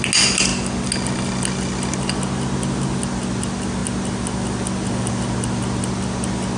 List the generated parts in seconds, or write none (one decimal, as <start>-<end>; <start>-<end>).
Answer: none